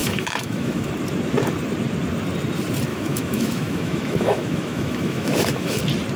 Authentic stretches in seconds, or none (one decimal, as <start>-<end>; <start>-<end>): 0.9-2.9; 5.8-6.2